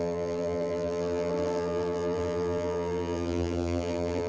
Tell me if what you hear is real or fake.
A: fake